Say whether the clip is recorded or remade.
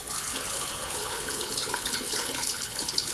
remade